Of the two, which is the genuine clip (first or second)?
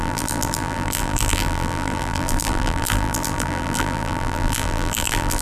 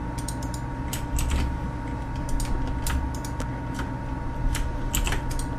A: second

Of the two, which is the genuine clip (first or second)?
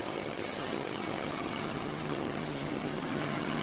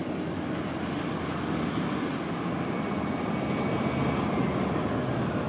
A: second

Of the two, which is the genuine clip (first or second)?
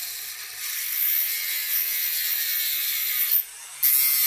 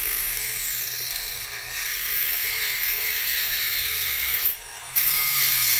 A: first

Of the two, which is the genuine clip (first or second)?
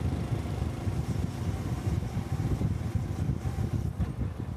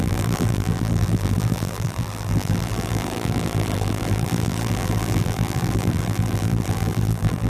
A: first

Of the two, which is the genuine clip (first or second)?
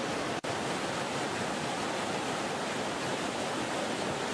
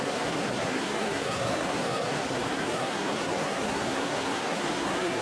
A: first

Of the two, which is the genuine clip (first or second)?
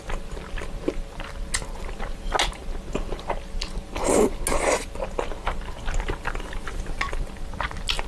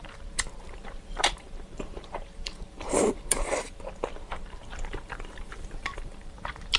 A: first